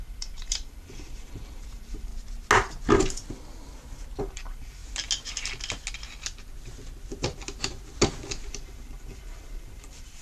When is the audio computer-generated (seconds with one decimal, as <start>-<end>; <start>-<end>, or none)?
0.0-2.1; 4.2-4.8; 8.5-10.2